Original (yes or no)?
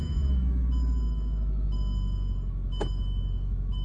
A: no